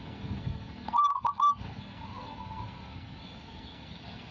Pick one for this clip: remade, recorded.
remade